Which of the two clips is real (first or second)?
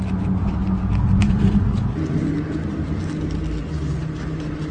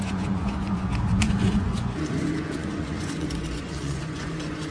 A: first